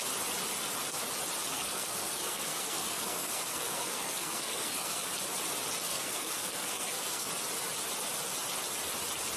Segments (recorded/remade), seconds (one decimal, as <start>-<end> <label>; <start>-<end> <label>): 0.0-1.5 recorded; 1.5-5.1 remade; 5.1-5.9 recorded; 5.9-7.3 remade; 7.3-9.4 recorded